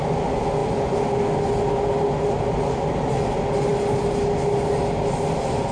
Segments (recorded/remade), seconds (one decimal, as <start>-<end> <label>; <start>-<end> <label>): 0.0-5.7 recorded